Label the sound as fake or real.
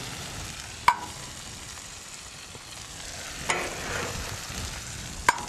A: real